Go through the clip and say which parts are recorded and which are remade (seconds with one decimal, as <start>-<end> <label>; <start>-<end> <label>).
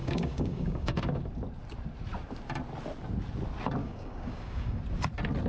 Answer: 0.0-1.0 remade; 1.0-3.8 recorded; 3.8-4.8 remade; 4.8-5.5 recorded